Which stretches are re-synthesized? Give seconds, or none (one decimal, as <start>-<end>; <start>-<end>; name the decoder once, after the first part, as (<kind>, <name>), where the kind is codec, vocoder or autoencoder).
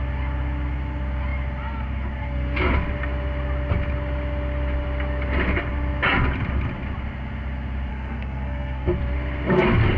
7.9-8.9 (codec, SNAC)